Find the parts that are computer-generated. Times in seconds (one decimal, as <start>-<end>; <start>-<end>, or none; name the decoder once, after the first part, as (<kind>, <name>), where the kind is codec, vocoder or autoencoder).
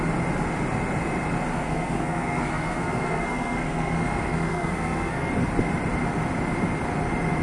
1.5-5.3 (codec, SNAC)